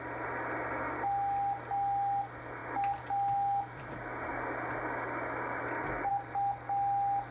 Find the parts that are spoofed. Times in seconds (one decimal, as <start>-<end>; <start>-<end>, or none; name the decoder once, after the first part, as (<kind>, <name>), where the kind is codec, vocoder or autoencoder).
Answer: none